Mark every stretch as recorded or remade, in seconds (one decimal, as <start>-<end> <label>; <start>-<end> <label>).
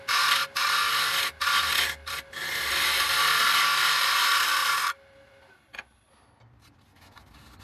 0.0-7.6 recorded